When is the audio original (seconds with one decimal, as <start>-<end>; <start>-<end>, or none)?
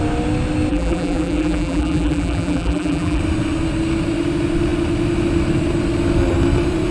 0.0-0.7; 3.2-6.9